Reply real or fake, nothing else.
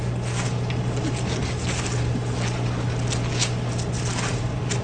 real